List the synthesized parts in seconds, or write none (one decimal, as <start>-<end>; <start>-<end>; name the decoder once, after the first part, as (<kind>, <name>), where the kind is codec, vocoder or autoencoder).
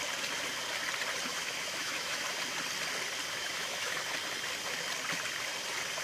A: 1.3-2.2 (autoencoder, DAC-VAE); 3.4-4.0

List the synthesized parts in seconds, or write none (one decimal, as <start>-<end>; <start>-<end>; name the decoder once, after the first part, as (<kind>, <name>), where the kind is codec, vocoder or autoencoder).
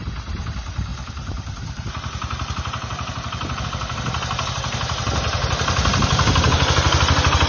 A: 0.9-3.6 (vocoder, BigVGAN v2)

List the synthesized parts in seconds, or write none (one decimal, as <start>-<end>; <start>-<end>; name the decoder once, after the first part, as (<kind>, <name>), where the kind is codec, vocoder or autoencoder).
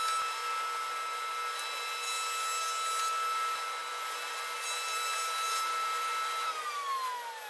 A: 3.8-6.1 (vocoder, BigVGAN v2)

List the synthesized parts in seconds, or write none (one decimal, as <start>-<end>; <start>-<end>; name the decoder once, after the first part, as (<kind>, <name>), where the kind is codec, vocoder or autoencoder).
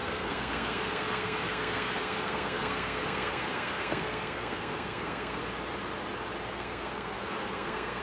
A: 0.0-5.4 (codec, SNAC); 6.5-8.0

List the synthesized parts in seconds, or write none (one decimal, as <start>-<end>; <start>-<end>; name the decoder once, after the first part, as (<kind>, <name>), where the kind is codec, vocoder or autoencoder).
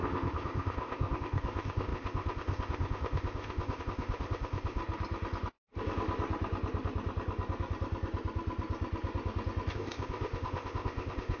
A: 0.0-4.8 (codec, ZipCodec); 9.7-11.4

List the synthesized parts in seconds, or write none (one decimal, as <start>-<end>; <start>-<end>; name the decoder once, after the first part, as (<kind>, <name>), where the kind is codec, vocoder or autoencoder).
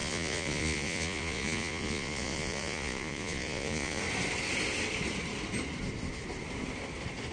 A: 0.0-4.0 (vocoder, Vocos)